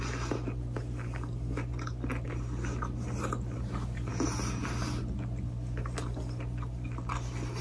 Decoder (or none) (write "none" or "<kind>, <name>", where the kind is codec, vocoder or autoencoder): none